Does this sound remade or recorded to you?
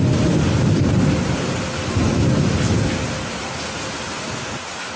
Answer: recorded